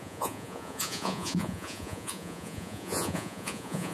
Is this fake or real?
fake